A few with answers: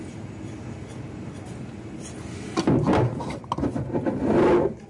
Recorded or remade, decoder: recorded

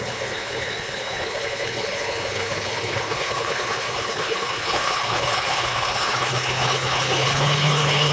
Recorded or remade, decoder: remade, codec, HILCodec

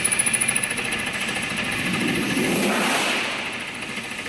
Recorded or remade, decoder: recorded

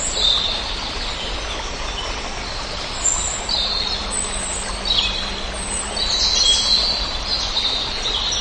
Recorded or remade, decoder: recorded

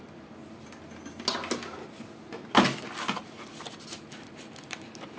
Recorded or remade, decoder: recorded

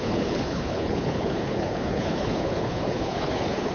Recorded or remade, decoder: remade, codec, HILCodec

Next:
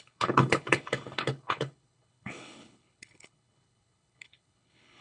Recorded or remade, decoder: remade, codec, HILCodec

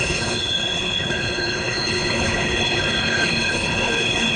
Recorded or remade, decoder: remade, codec, HILCodec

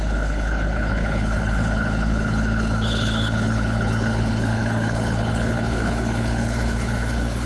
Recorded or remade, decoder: remade, codec, HILCodec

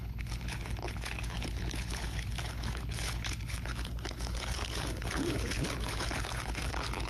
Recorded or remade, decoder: remade, codec, HILCodec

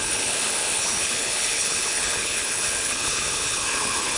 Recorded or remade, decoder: remade, codec, HILCodec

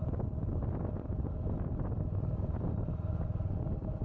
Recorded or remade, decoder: recorded